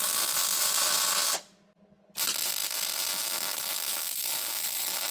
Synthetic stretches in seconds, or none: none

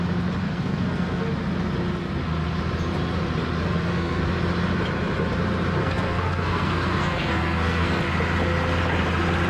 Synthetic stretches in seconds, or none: 0.4-1.3 (codec, SNAC); 3.7-4.2; 5.8-8.0

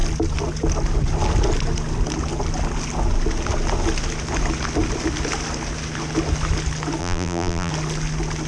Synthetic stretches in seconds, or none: 7.0-7.7 (vocoder, BigVGAN v2)

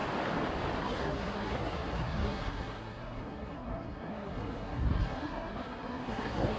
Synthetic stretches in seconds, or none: 0.8-6.6 (codec, SNAC)

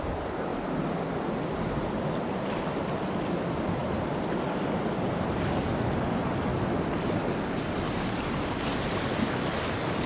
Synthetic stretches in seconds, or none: none